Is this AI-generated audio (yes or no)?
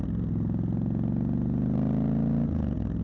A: no